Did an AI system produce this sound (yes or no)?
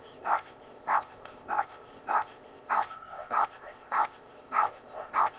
yes